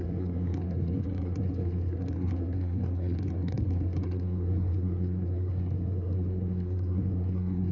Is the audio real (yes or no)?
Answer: no